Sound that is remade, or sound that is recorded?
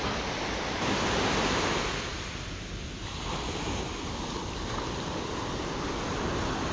recorded